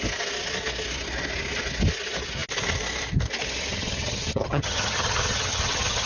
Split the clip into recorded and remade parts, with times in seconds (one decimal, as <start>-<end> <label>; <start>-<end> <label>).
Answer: 0.0-3.7 recorded; 3.7-6.1 remade

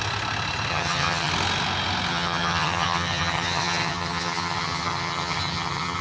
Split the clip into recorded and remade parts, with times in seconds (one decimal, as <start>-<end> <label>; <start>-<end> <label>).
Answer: 0.0-0.7 recorded; 0.7-1.3 remade; 1.3-2.1 recorded; 2.1-6.0 remade

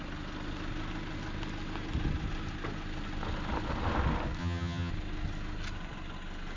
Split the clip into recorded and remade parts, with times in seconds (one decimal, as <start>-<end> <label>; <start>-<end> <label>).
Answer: 0.0-4.4 recorded; 4.4-4.9 remade; 4.9-6.6 recorded

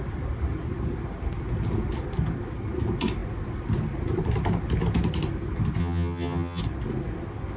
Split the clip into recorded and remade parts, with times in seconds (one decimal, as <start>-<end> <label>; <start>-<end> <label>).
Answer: 0.0-5.8 recorded; 5.8-6.6 remade; 6.6-7.6 recorded

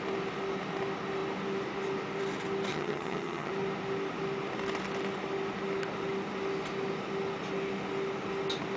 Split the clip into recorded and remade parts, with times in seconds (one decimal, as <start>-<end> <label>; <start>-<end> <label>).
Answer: 0.0-2.7 recorded; 2.7-3.5 remade; 3.5-8.8 recorded

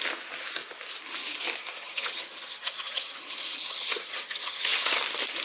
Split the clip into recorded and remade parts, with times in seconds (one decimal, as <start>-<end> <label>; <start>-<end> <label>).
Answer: 0.0-1.8 recorded; 1.8-5.0 remade; 5.0-5.4 recorded

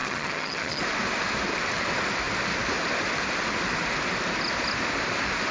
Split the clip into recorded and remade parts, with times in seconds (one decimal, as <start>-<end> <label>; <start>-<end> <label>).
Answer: 0.0-0.8 remade; 0.8-5.5 recorded